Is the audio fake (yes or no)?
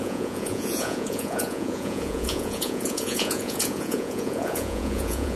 yes